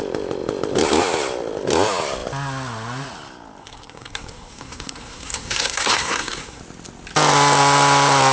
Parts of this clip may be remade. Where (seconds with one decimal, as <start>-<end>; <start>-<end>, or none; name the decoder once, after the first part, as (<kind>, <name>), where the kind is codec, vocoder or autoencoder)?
3.6-6.6 (codec, SNAC)